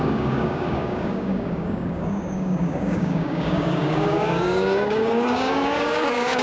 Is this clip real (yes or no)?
no